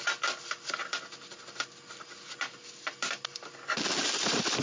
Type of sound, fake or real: real